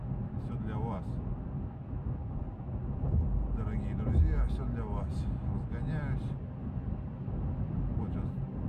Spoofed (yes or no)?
no